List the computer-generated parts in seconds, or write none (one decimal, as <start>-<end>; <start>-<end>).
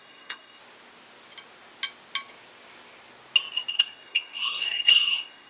0.0-0.6; 3.7-5.5